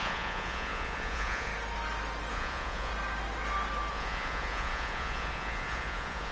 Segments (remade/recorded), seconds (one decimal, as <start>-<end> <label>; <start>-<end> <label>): 0.0-1.5 remade; 1.5-2.3 recorded; 2.3-2.9 remade; 2.9-3.9 recorded; 3.9-6.3 remade